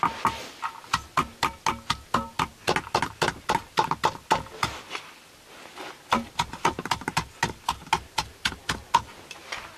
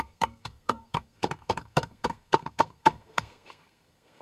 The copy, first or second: second